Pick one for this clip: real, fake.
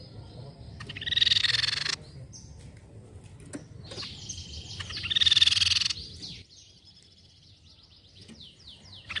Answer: real